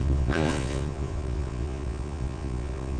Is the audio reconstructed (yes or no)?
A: yes